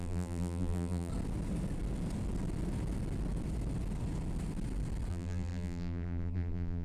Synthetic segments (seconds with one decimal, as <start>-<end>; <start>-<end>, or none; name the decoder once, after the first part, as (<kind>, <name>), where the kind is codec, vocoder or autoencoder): 0.0-1.1 (vocoder, BigVGAN v2); 5.1-6.8